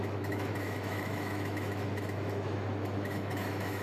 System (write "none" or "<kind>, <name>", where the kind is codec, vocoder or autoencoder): autoencoder, DAC-VAE